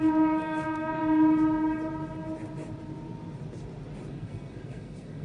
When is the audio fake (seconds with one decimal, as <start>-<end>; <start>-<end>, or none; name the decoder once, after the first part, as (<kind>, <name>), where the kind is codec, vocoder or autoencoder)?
0.0-1.0 (codec, SNAC); 4.1-5.2

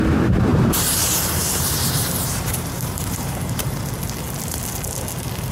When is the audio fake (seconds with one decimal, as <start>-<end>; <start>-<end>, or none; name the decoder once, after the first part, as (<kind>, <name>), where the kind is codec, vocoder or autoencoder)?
0.5-3.8 (vocoder, BigVGAN v2)

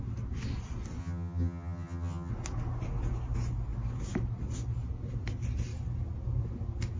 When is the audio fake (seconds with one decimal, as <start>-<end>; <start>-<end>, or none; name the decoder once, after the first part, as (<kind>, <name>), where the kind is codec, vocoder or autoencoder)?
1.0-2.3 (vocoder, HiFi-GAN)

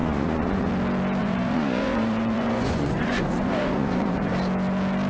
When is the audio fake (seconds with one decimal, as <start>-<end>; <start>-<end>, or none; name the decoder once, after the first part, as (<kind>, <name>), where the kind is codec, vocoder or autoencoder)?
0.0-0.7 (vocoder, Vocos); 1.2-4.3